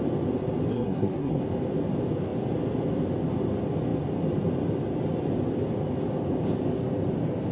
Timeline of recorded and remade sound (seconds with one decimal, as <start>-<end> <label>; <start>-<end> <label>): 0.0-0.7 recorded; 0.7-1.4 remade; 1.4-7.5 recorded